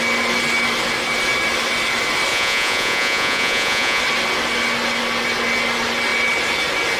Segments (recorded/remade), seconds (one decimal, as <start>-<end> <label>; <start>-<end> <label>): 0.0-2.3 recorded; 2.3-4.0 remade; 4.0-7.0 recorded